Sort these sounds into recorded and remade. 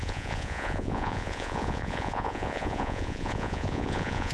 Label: remade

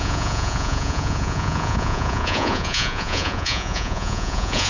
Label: remade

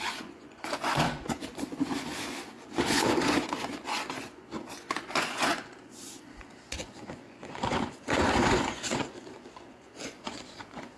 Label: remade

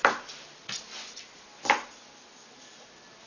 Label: recorded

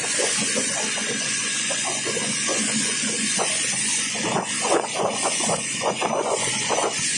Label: remade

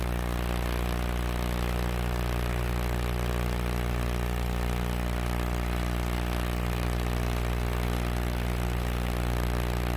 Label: recorded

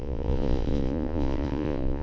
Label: remade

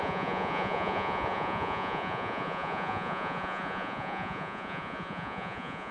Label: remade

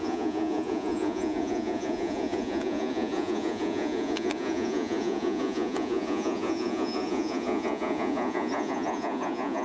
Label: remade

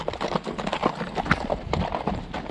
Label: recorded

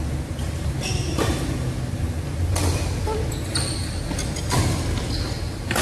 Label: recorded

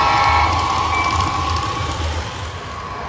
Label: recorded